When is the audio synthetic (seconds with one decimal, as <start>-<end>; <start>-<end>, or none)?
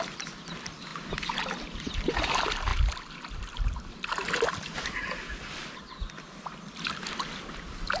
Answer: none